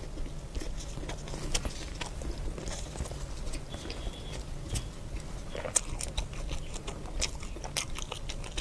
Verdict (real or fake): real